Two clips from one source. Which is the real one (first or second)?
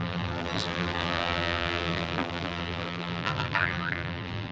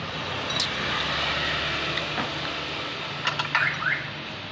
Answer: second